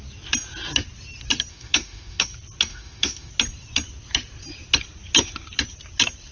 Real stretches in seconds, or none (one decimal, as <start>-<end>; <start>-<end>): 0.0-1.5; 2.3-2.7; 3.3-6.3